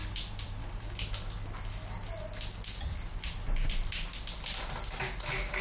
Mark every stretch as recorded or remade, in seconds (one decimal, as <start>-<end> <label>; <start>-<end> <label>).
0.0-0.9 remade; 0.9-5.6 recorded